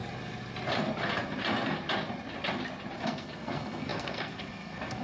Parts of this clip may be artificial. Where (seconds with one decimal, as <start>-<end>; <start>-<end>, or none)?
3.0-5.0